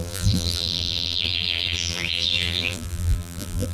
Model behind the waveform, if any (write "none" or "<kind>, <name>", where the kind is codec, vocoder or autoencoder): vocoder, BigVGAN v2